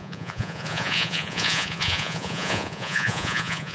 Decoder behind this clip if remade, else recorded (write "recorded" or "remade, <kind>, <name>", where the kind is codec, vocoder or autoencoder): remade, vocoder, Vocos